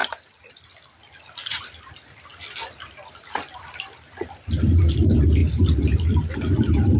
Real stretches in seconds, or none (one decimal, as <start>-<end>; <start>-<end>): 0.0-7.0